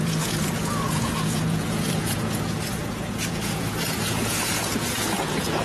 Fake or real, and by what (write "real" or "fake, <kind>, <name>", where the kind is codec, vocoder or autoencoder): fake, vocoder, Vocos